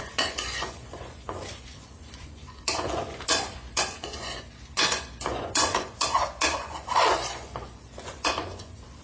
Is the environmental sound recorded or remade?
remade